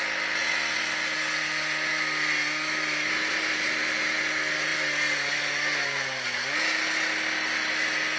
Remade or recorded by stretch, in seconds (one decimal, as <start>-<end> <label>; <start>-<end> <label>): 0.0-8.2 recorded